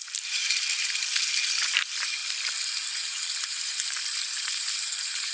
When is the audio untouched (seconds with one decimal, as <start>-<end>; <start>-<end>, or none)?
2.2-2.9